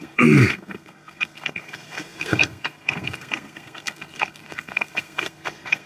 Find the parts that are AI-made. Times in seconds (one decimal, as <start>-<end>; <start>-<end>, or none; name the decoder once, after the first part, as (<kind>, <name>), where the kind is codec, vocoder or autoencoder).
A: 0.0-5.9 (codec, SNAC)